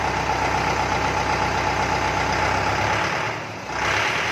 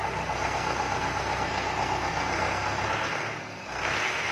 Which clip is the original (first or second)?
first